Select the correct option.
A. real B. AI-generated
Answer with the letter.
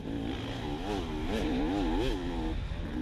A